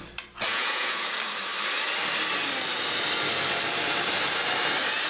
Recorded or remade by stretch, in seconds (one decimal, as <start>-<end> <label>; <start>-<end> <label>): 0.0-0.5 recorded; 0.5-1.1 remade; 1.1-5.1 recorded